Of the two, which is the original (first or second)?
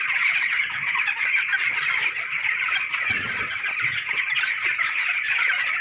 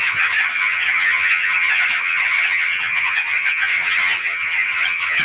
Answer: first